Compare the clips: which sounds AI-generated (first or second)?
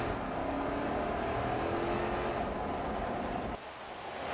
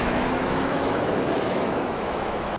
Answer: second